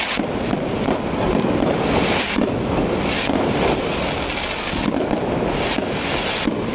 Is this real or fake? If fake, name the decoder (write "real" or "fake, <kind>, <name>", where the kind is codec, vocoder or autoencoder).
real